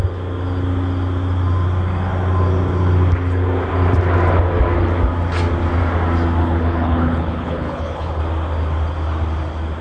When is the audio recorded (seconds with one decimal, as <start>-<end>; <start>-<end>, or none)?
0.0-6.4; 8.2-9.8